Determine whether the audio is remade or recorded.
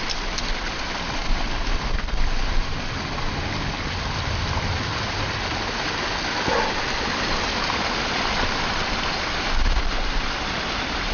recorded